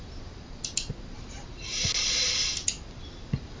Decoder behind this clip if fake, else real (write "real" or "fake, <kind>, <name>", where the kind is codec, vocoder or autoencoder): real